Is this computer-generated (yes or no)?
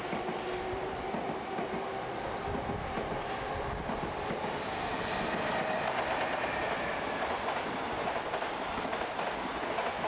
no